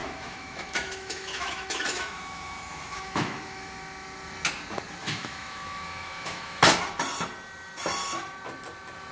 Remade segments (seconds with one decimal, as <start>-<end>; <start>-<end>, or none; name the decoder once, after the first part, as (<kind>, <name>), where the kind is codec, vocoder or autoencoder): 0.0-3.8 (autoencoder, DAC-VAE); 5.0-6.6